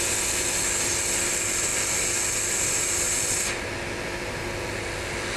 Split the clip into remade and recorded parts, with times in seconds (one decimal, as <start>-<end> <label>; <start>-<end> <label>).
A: 0.0-5.4 recorded